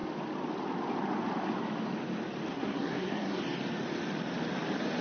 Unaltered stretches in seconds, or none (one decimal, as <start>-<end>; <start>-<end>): 0.0-2.5; 3.4-5.0

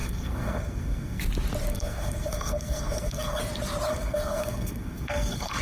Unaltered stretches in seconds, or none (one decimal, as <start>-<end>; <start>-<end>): 1.2-1.7; 3.4-3.9

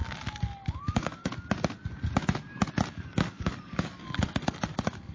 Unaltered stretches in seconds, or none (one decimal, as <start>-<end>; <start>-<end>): 1.3-2.9

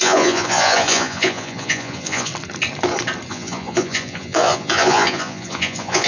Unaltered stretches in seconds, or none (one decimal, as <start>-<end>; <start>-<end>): 2.3-3.3

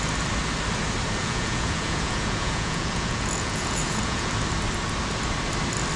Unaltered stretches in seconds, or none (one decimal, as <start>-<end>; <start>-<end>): 0.0-1.2; 4.3-6.0

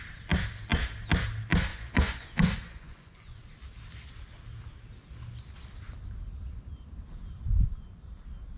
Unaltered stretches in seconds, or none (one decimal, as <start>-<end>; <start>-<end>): 0.0-1.7; 3.4-8.6

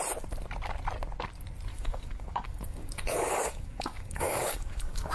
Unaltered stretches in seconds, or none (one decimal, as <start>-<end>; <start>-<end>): 0.0-1.7

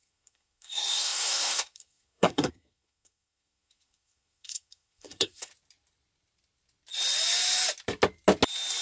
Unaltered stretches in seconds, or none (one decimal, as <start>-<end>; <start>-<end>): 5.5-8.8